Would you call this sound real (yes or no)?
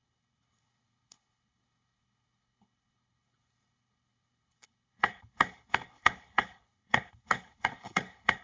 no